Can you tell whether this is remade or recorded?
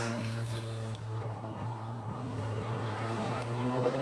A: remade